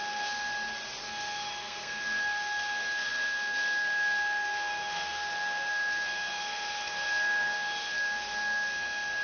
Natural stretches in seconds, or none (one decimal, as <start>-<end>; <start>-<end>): 0.5-1.0